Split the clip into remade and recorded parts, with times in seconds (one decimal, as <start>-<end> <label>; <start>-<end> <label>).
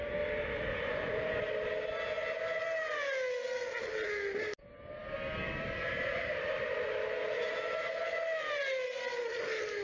0.0-0.7 recorded; 0.7-1.4 remade; 1.4-9.8 recorded